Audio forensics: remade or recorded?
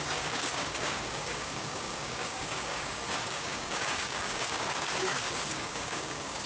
remade